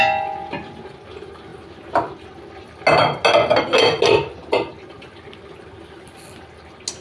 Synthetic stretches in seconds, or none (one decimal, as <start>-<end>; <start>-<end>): none